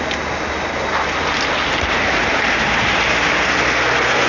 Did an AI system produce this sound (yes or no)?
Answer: no